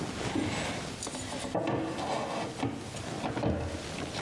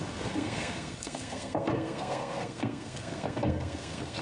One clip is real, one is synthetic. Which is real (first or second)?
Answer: first